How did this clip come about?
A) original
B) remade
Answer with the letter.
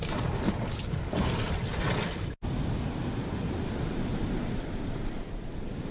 A